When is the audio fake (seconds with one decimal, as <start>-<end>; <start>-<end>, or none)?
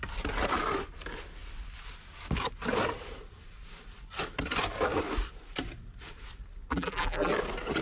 6.7-7.3